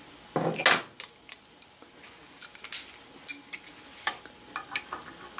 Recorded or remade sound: recorded